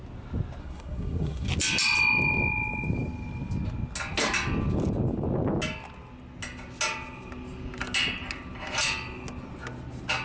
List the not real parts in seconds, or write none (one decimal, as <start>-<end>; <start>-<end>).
0.6-1.5